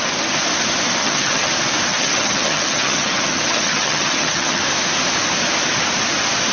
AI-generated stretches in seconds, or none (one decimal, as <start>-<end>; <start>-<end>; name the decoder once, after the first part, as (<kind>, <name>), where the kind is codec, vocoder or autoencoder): 1.0-1.5 (vocoder, HiFi-GAN); 1.9-4.6